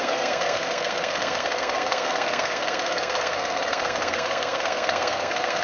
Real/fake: fake